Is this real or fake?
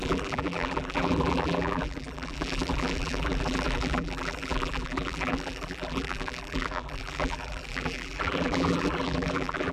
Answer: fake